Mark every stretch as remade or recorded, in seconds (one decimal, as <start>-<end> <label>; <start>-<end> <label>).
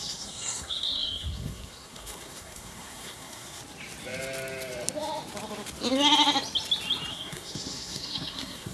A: 0.0-3.6 remade; 3.6-7.1 recorded; 7.1-8.7 remade